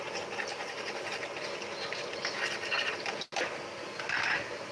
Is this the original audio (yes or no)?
yes